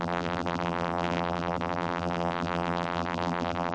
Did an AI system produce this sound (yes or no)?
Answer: yes